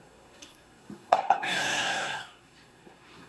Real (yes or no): no